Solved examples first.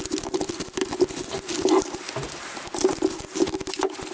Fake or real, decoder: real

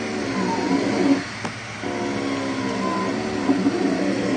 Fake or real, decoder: real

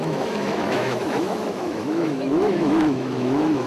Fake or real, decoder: fake, autoencoder, DAC-VAE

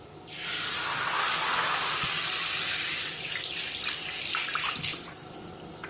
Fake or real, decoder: real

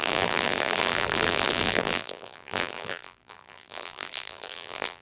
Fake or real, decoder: fake, vocoder, BigVGAN v2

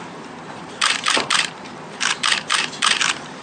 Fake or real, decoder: fake, vocoder, BigVGAN v2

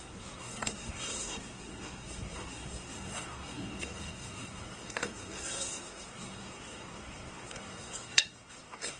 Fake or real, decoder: fake, codec, SNAC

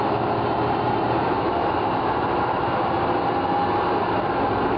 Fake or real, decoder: real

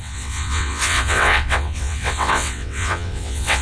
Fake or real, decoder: fake, vocoder, WaveNeXt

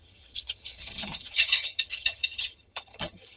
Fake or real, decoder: fake, vocoder, HiFi-GAN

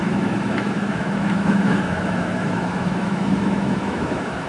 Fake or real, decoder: fake, autoencoder, DAC-VAE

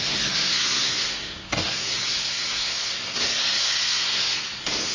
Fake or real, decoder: fake, codec, SNAC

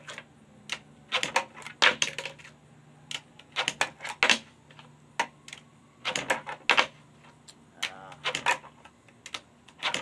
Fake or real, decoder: real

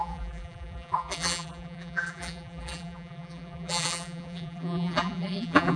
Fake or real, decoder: fake, vocoder, BigVGAN v2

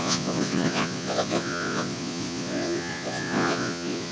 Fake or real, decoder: fake, vocoder, Vocos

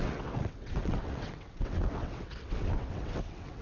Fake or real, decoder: fake, vocoder, WaveNeXt